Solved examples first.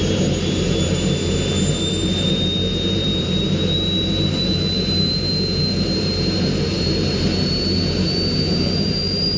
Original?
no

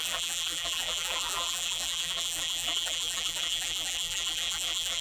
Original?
no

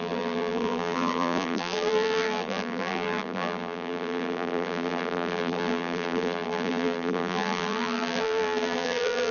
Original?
no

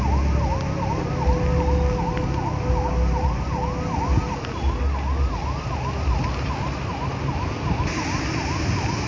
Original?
yes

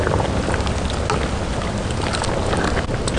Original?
yes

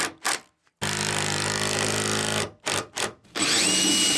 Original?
yes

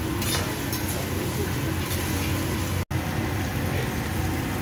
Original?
yes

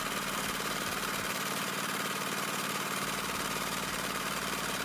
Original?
no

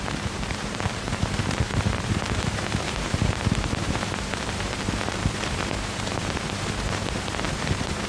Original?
no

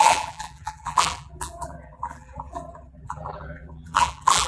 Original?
no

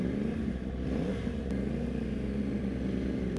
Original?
yes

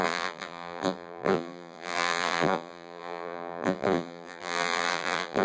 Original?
no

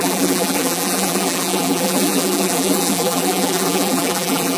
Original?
no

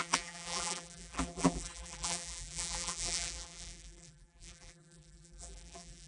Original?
no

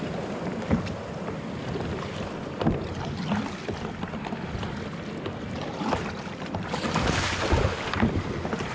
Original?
no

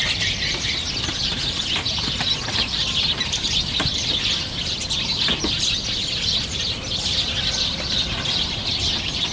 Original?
no